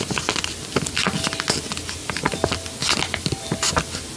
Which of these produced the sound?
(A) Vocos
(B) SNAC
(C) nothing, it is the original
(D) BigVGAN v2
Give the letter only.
C